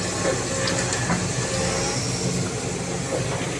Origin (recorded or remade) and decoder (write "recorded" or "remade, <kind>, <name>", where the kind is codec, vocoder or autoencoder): recorded